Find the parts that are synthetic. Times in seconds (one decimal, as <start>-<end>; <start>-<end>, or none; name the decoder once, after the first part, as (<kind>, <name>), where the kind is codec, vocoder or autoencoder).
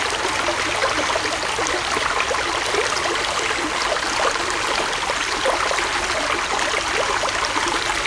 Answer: none